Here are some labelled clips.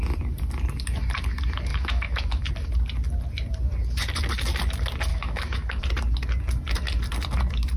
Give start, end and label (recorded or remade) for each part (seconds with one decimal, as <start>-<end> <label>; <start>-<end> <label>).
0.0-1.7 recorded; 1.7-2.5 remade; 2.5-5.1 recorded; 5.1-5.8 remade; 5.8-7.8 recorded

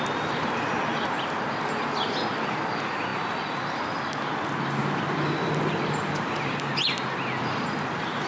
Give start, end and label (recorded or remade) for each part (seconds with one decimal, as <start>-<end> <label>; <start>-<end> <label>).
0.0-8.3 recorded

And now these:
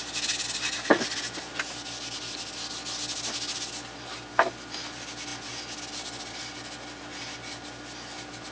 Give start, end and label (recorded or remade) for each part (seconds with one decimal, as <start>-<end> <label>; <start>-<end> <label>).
0.0-8.5 recorded

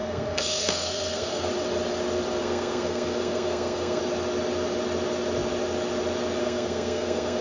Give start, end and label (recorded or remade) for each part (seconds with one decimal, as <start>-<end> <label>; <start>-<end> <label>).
0.0-1.5 remade; 1.5-2.4 recorded; 2.4-4.0 remade; 4.0-6.4 recorded; 6.4-7.4 remade

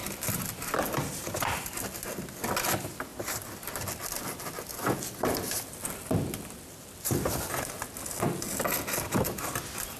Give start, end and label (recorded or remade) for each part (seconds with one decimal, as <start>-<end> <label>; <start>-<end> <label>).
0.0-10.0 recorded